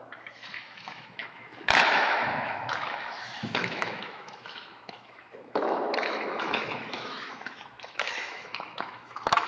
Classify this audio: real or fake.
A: fake